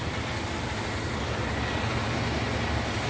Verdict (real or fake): real